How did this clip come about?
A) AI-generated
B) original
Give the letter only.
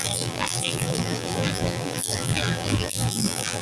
A